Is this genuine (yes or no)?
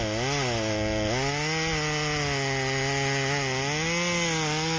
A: yes